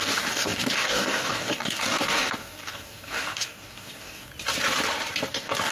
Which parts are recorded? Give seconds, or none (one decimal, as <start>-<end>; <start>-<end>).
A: 4.3-5.3